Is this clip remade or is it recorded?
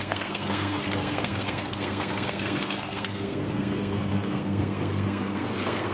remade